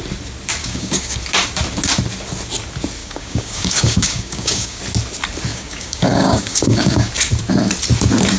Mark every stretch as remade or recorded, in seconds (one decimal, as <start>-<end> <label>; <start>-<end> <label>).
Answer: 0.0-0.6 recorded; 0.6-1.2 remade; 1.2-3.0 recorded; 3.0-4.8 remade; 4.8-5.5 recorded; 5.5-7.1 remade; 7.1-8.4 recorded